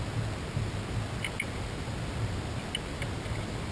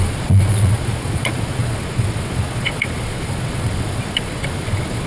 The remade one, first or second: second